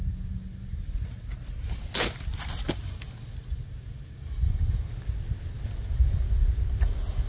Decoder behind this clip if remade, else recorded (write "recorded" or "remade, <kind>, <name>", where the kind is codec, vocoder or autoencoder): recorded